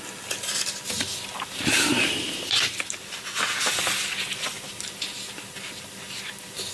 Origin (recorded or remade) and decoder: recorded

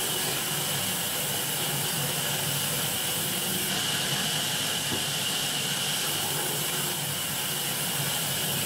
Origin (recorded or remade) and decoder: recorded